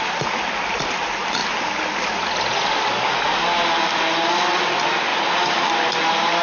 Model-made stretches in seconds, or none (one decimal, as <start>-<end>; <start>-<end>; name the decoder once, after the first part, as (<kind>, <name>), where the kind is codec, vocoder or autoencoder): none